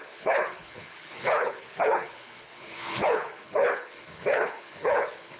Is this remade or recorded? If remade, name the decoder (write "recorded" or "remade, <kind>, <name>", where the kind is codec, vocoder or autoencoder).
remade, codec, HILCodec